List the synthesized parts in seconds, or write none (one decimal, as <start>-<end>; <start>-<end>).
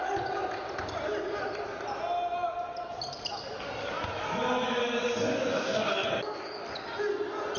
5.5-6.1